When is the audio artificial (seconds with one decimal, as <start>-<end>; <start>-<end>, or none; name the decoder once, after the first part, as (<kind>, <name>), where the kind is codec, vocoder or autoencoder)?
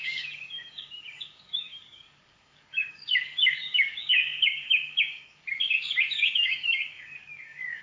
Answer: 0.0-7.8 (codec, DAC)